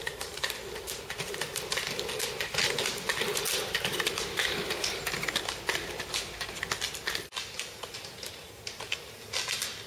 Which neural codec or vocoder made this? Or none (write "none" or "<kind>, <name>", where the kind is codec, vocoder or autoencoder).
none